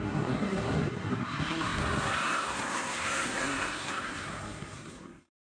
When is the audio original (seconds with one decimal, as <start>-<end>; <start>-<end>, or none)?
none

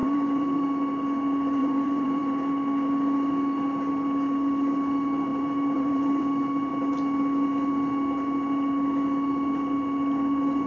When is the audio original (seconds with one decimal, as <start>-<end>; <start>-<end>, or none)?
0.6-1.6; 2.4-5.3; 6.2-10.7

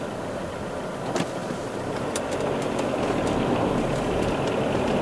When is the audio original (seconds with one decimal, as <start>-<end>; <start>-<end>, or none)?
none

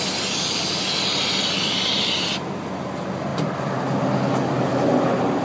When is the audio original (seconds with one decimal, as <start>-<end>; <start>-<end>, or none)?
0.0-5.4

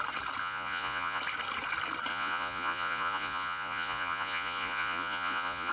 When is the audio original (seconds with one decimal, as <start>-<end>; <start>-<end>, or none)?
0.0-0.4; 1.2-2.1

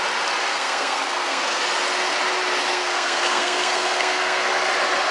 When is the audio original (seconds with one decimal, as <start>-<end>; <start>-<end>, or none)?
0.0-0.5; 1.6-2.7; 4.5-5.1

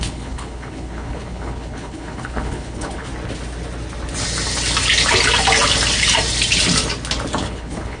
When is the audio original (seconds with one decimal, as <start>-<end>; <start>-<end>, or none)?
3.1-7.4